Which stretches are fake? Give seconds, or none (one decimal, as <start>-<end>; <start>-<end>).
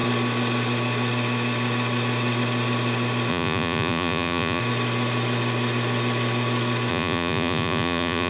3.3-4.6; 6.9-8.3